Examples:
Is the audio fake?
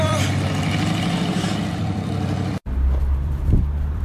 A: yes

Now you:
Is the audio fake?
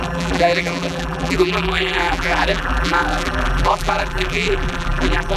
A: yes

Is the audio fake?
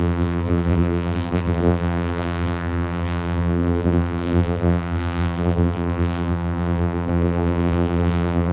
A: yes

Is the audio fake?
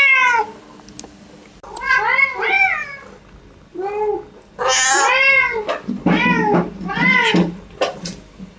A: no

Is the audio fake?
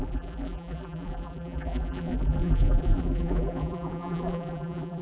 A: yes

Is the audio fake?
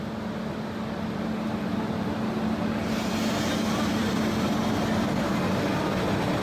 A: no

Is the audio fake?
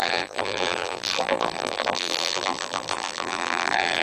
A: yes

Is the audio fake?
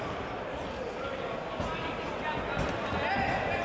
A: no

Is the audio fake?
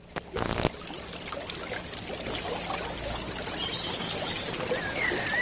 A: no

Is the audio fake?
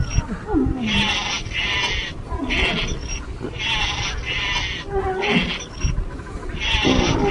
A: no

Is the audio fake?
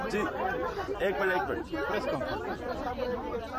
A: yes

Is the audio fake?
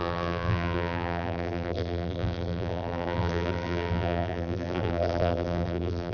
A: yes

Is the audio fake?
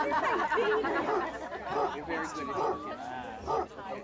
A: no